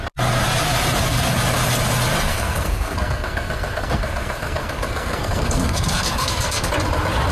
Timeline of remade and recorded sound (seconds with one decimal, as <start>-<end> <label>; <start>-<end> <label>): 0.0-2.3 recorded; 2.3-6.7 remade; 6.7-7.3 recorded